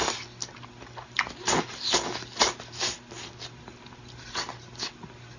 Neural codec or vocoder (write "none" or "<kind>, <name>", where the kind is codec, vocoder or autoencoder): none